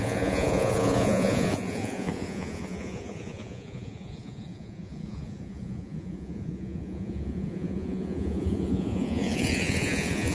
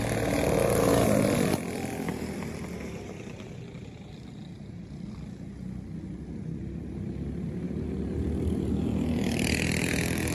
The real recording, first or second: second